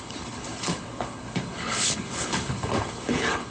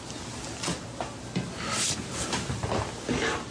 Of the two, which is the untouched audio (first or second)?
second